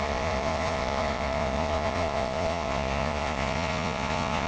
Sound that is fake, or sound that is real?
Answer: fake